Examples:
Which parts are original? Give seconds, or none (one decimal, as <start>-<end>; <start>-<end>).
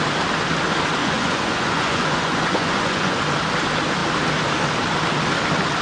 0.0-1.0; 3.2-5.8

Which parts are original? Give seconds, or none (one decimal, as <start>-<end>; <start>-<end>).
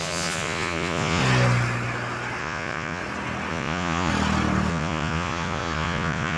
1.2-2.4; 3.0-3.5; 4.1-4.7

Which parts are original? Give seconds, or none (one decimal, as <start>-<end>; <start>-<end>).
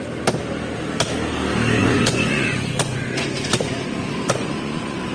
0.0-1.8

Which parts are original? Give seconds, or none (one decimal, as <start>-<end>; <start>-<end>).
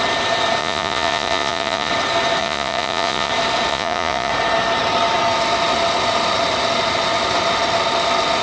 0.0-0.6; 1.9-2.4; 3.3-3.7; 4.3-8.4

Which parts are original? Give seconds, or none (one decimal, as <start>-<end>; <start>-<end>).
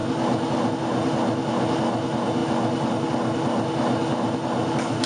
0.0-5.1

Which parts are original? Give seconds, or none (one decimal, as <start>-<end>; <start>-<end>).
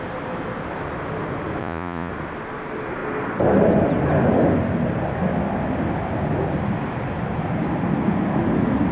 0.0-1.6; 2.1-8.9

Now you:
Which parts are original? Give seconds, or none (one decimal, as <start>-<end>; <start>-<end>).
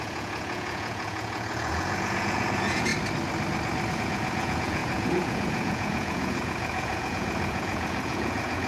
2.9-3.9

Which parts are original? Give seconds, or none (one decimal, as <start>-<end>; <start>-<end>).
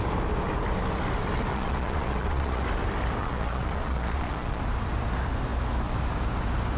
0.0-1.5; 2.6-3.2; 4.6-6.8